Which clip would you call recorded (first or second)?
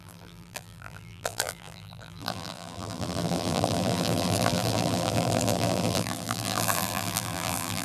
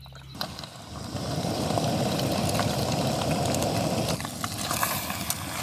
second